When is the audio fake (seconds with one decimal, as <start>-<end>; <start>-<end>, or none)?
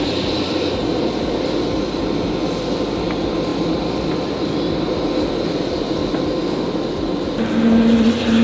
none